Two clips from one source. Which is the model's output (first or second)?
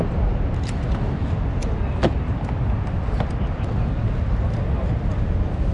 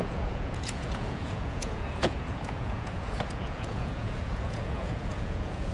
second